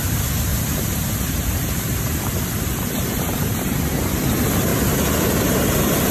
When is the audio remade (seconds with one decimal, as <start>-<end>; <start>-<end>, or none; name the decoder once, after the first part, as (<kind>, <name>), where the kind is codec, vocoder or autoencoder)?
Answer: 0.5-4.2 (vocoder, BigVGAN v2)